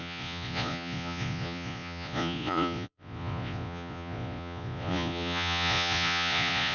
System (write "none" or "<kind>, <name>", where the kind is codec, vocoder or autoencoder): vocoder, Vocos